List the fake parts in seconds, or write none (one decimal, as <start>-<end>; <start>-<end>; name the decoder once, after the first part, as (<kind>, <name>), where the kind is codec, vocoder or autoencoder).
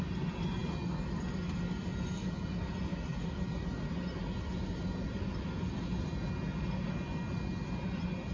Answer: none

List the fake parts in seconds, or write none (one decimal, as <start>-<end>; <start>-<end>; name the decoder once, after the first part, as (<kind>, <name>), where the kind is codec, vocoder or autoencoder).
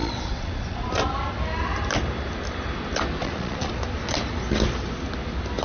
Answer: 0.0-0.9 (vocoder, Vocos); 3.2-3.7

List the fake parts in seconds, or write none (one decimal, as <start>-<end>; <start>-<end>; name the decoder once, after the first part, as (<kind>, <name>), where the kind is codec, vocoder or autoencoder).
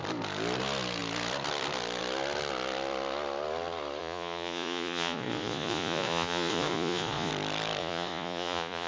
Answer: 4.0-7.3 (vocoder, Vocos); 7.8-8.9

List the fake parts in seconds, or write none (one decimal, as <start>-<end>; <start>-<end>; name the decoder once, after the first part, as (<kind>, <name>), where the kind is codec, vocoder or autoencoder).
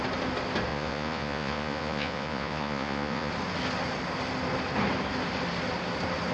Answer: 0.7-3.3 (vocoder, Vocos)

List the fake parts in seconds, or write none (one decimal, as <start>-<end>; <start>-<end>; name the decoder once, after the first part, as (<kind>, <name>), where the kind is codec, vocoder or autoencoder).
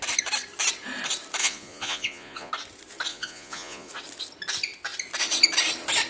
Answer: 1.4-2.5 (vocoder, Vocos); 3.1-3.9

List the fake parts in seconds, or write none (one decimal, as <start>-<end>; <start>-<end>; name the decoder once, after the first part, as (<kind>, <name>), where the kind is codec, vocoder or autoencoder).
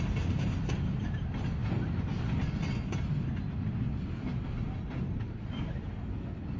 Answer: none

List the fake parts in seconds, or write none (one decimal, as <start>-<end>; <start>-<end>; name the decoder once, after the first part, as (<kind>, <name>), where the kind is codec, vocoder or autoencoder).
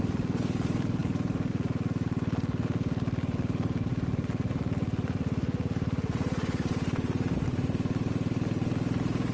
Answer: none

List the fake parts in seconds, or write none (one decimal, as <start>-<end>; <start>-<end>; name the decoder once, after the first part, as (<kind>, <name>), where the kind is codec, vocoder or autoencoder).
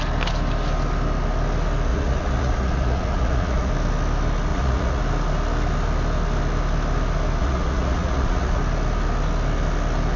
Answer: 1.9-3.7 (vocoder, Vocos); 4.5-5.0; 7.4-8.6